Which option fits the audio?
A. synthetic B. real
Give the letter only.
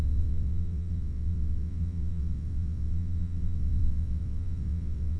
A